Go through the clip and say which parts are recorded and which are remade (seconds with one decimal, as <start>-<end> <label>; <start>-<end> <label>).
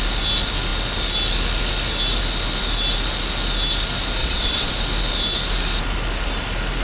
0.0-4.2 recorded; 4.2-4.7 remade; 4.7-6.8 recorded